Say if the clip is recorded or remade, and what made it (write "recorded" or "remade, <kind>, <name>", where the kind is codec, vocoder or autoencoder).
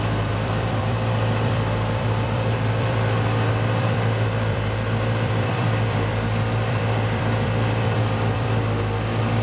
remade, vocoder, BigVGAN v2